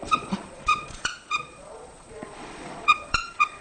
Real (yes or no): no